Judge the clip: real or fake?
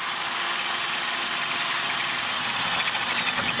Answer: real